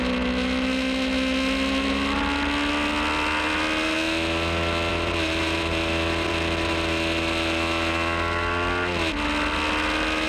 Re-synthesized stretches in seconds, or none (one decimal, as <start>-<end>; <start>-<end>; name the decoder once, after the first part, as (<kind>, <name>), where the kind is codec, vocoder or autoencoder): 4.9-6.3 (vocoder, BigVGAN v2)